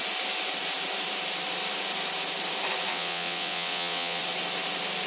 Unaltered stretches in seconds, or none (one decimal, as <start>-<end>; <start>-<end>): 0.0-2.9; 4.2-5.1